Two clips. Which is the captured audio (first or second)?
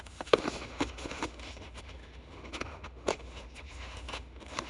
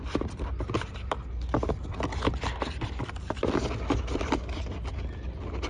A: second